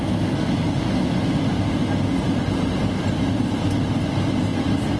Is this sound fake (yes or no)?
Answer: no